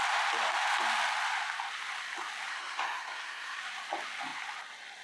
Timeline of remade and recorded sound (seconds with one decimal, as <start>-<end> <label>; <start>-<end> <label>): 0.0-2.5 recorded; 2.5-3.6 remade; 3.6-5.0 recorded

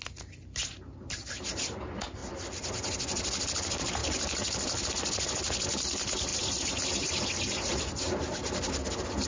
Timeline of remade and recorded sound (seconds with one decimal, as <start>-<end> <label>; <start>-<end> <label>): 0.0-2.2 recorded; 2.2-2.9 remade; 2.9-6.3 recorded; 6.3-8.7 remade; 8.7-9.3 recorded

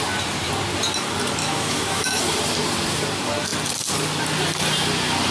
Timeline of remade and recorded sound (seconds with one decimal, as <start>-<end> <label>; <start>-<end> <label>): 0.0-1.4 recorded; 1.4-2.2 remade; 2.2-5.3 recorded